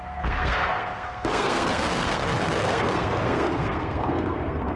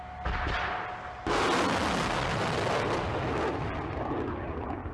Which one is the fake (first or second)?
first